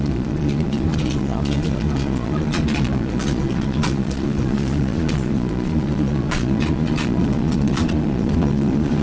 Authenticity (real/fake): fake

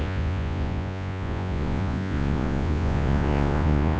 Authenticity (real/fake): fake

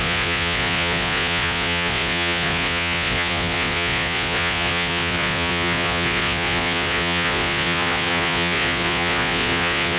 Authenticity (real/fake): fake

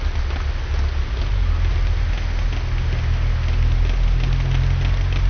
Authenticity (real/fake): real